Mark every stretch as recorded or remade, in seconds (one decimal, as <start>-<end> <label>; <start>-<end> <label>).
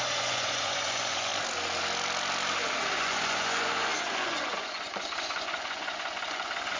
0.0-1.3 remade; 1.3-2.9 recorded; 2.9-6.8 remade